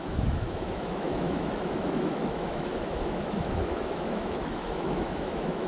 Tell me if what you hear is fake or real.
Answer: fake